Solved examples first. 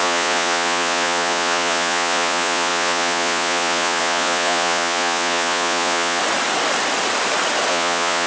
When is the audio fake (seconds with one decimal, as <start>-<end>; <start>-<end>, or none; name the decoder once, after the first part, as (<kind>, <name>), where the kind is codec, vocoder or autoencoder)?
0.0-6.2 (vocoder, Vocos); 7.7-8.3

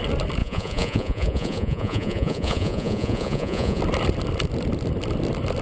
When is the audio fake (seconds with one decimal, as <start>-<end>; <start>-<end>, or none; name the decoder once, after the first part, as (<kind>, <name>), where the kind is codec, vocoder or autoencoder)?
0.4-3.8 (vocoder, Vocos)

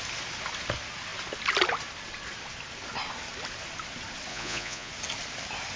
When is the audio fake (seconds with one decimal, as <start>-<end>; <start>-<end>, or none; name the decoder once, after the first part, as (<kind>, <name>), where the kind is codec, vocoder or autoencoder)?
4.3-4.9 (vocoder, Vocos)